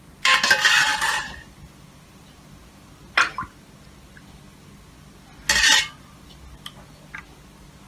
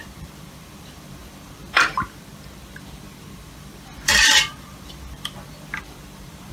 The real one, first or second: first